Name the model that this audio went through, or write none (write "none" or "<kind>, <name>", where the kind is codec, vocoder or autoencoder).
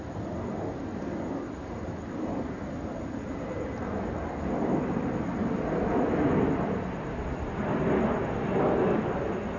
none